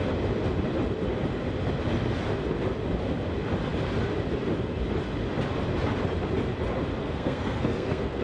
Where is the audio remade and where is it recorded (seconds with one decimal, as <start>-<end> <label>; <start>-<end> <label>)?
0.0-7.0 recorded; 7.0-8.2 remade